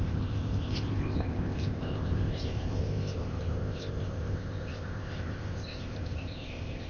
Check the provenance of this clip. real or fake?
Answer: fake